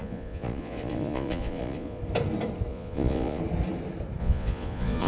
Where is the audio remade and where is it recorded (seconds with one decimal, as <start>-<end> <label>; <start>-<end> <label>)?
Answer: 0.0-2.0 remade; 2.0-2.7 recorded; 2.7-3.4 remade; 3.4-4.2 recorded; 4.2-5.1 remade